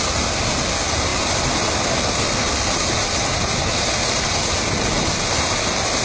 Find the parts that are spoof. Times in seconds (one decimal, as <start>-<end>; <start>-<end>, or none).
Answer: none